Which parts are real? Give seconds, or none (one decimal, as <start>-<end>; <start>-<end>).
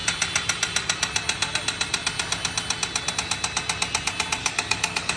0.0-4.4